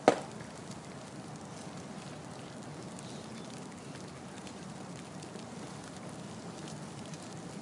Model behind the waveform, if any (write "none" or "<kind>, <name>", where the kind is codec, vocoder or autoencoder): none